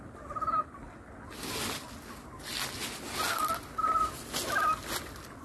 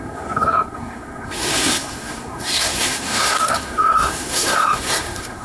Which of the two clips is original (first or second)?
first